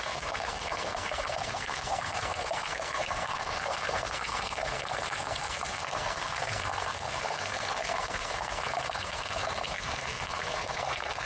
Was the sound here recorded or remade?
remade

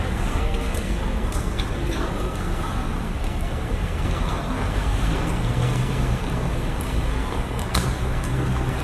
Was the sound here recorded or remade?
remade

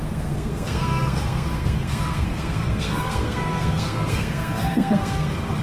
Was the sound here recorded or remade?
remade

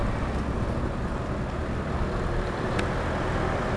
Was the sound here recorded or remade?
recorded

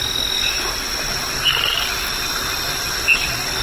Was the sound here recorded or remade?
recorded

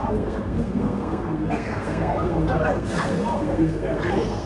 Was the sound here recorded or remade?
remade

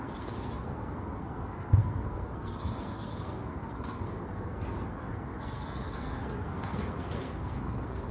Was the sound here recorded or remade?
remade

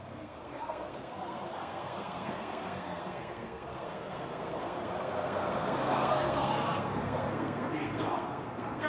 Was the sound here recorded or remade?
remade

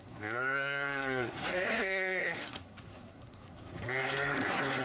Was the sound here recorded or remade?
remade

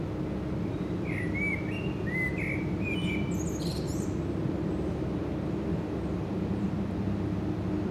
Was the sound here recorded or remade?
recorded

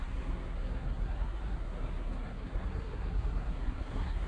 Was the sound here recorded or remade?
remade